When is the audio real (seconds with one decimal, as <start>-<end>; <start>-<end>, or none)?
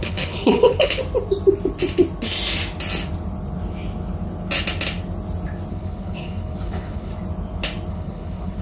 1.0-5.7; 7.1-7.9